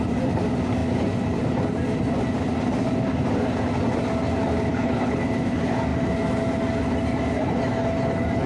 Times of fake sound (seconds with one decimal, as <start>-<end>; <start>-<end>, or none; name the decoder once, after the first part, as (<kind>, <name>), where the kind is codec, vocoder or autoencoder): 4.7-5.2 (codec, HILCodec)

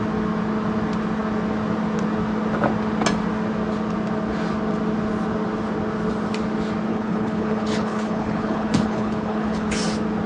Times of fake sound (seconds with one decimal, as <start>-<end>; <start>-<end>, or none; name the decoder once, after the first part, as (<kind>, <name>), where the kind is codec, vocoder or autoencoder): 6.9-9.7 (codec, HILCodec)

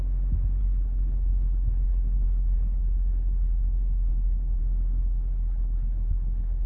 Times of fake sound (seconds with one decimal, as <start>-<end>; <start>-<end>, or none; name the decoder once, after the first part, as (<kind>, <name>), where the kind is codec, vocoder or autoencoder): 0.6-4.6 (codec, HILCodec); 5.0-6.7

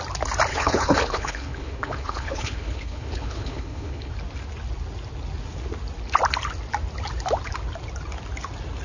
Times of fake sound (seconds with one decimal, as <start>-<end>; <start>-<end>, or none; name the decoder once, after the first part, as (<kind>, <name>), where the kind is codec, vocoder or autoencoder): 0.5-4.1 (codec, HILCodec)

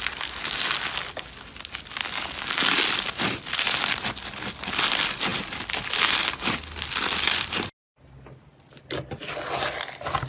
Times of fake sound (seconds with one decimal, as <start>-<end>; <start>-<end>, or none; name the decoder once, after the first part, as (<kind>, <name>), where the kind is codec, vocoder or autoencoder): none